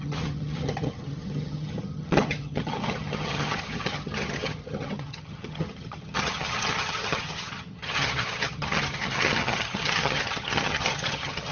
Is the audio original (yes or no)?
no